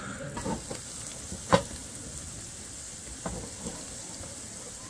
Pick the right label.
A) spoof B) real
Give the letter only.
B